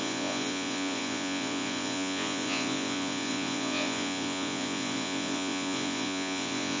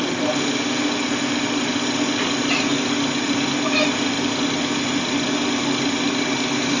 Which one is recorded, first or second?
second